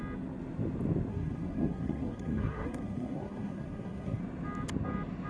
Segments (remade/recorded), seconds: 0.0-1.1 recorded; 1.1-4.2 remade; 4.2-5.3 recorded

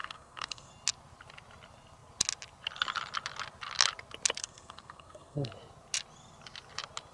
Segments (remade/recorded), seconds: 0.0-0.7 remade; 0.7-4.4 recorded; 4.4-5.5 remade; 5.5-7.1 recorded

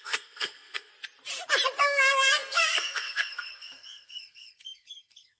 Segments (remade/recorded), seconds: 0.0-0.9 remade; 0.9-1.8 recorded; 1.8-5.4 remade

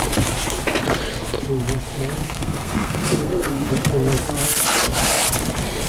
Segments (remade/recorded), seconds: 0.0-2.2 recorded; 2.2-3.7 remade; 3.7-5.9 recorded

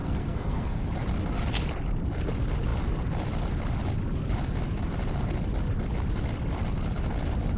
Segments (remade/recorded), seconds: 0.0-0.8 remade; 0.8-7.6 recorded

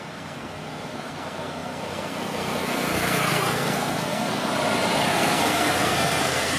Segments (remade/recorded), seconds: 0.0-4.5 remade; 4.5-5.1 recorded; 5.1-6.6 remade

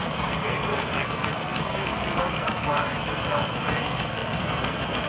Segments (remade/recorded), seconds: 0.0-5.1 remade